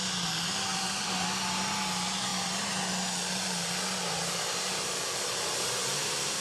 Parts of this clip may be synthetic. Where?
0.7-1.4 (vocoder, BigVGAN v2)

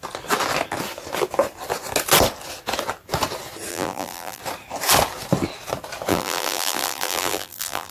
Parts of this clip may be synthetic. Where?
3.7-4.4 (vocoder, BigVGAN v2); 6.1-7.9